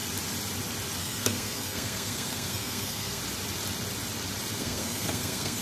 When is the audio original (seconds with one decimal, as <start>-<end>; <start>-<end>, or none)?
0.0-1.0; 3.2-4.6